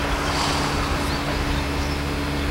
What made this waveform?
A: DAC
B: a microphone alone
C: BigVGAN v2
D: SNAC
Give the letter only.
B